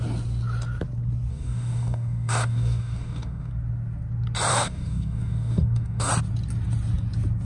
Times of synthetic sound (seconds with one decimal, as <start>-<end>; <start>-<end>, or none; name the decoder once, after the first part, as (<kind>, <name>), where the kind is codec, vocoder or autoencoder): 1.3-3.5 (codec, DAC); 4.5-6.1